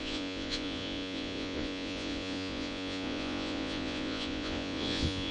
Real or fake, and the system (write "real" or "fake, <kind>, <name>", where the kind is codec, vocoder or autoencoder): fake, vocoder, Vocos